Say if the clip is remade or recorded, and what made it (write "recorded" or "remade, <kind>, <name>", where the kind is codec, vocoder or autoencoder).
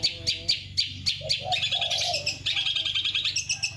recorded